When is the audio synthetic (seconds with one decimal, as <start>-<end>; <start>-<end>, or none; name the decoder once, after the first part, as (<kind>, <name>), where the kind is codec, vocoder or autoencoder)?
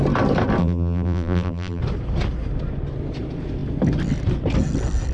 0.6-1.8 (vocoder, BigVGAN v2)